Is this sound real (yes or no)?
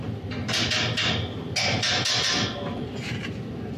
yes